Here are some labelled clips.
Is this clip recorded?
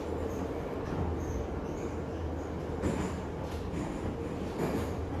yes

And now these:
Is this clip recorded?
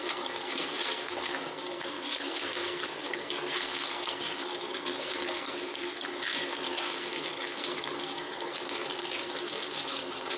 no